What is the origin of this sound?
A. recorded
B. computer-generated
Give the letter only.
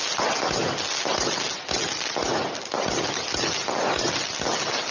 A